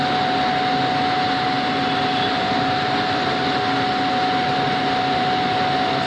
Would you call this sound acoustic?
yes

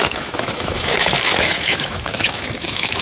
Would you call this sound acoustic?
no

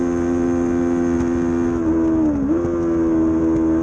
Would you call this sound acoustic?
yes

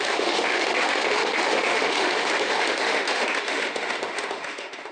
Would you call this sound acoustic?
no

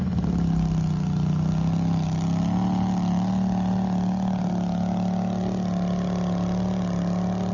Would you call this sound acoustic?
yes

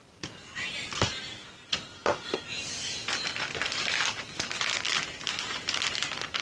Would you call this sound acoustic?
yes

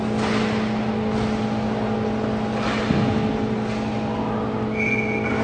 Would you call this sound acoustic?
yes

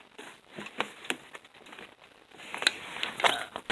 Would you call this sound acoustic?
yes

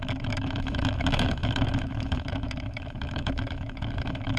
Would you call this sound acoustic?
no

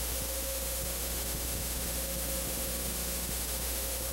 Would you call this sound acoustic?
no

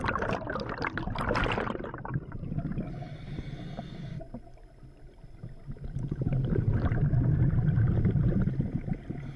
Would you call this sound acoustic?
yes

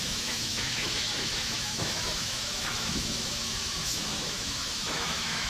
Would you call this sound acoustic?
no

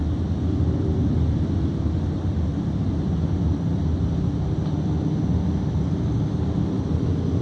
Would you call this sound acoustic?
yes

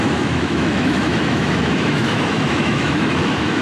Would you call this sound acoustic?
no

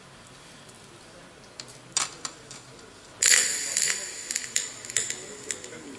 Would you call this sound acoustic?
yes